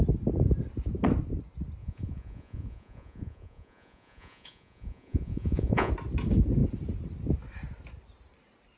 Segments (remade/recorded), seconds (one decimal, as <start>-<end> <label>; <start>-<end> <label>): 0.0-1.8 recorded; 1.8-5.9 remade; 5.9-8.8 recorded